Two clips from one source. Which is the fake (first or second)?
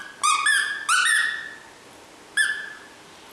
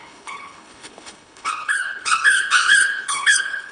second